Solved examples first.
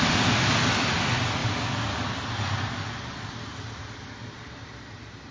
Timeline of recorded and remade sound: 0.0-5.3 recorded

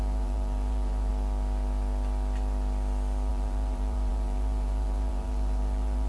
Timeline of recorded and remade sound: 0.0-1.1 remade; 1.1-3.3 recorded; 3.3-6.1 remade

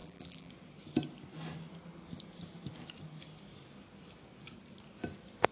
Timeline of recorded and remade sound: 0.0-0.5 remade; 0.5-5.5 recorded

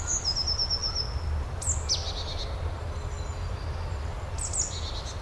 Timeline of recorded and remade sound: 0.0-5.2 recorded

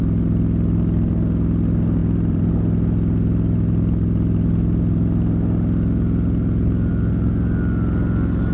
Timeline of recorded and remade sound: 0.0-2.0 recorded; 2.0-2.5 remade; 2.5-8.5 recorded

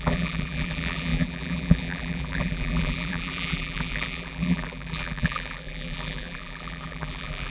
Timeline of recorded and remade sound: 0.0-7.5 remade